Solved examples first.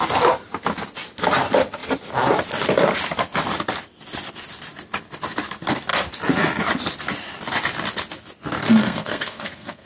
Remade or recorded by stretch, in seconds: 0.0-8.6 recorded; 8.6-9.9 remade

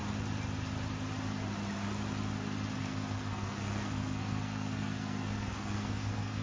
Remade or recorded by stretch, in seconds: 0.0-2.8 recorded; 2.8-6.4 remade

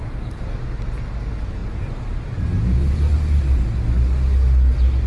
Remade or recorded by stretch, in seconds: 0.0-5.1 recorded